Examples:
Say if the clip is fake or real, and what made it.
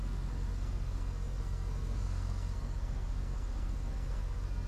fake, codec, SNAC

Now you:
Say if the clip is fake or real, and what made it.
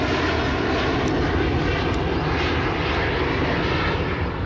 real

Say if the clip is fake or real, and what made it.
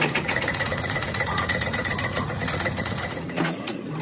fake, vocoder, Vocos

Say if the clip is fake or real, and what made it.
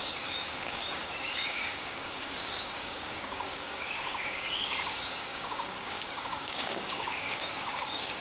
fake, codec, DAC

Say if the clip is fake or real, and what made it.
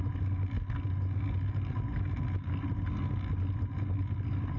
real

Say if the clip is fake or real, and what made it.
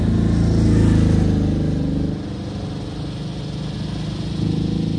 real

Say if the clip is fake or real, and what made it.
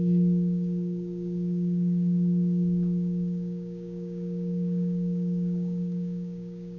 fake, codec, DAC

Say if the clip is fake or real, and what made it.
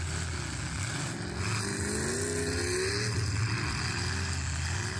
real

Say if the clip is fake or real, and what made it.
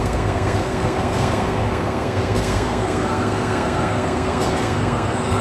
fake, codec, SNAC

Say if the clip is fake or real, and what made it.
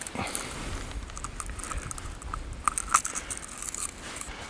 real